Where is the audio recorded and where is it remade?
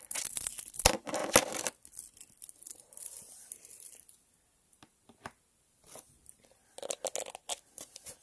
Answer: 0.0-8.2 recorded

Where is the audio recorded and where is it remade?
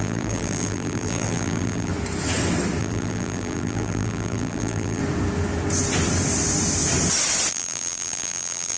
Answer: 0.0-1.9 remade; 1.9-2.8 recorded; 2.8-5.0 remade; 5.0-7.5 recorded; 7.5-8.8 remade